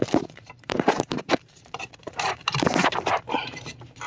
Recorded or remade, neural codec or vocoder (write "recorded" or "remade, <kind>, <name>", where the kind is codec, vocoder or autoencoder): remade, vocoder, BigVGAN v2